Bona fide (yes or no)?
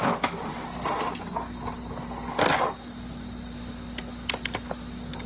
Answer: yes